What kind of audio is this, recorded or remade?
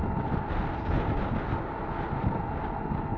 recorded